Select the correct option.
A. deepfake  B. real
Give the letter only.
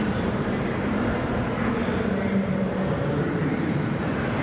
A